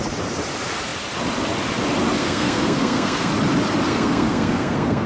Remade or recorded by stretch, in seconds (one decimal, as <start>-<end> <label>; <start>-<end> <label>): 0.0-2.2 recorded; 2.2-3.3 remade; 3.3-3.9 recorded; 3.9-5.1 remade